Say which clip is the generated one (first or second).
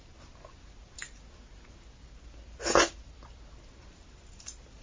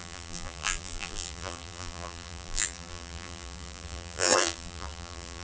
second